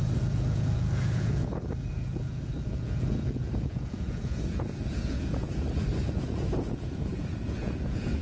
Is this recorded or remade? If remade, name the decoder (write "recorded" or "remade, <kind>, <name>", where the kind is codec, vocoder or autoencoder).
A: remade, vocoder, Vocos